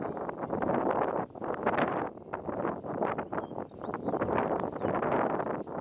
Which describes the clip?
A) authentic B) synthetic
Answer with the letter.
A